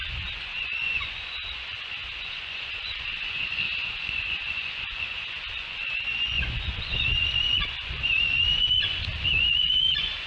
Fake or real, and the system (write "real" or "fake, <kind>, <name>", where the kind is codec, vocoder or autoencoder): fake, vocoder, Vocos